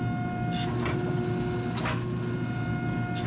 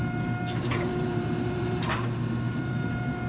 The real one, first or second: first